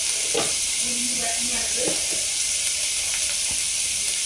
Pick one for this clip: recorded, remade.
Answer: remade